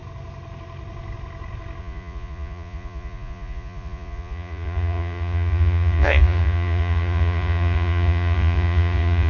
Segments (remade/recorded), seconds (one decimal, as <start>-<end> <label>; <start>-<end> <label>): 0.0-1.8 recorded; 1.8-9.3 remade